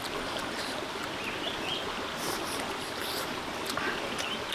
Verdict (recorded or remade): remade